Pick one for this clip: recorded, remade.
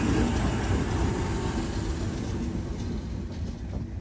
recorded